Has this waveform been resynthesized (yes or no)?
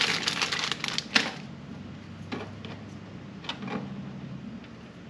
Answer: no